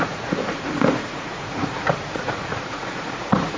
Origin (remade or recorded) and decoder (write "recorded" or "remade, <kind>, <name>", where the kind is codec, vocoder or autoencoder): remade, vocoder, Vocos